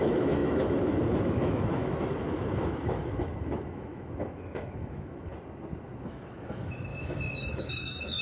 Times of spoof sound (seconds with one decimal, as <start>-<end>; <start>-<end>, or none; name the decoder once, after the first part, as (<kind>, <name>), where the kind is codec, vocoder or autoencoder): 0.0-5.3 (autoencoder, DAC-VAE); 6.0-6.9; 7.4-8.2